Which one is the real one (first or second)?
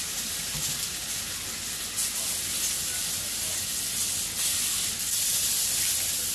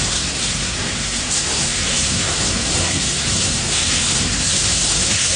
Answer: first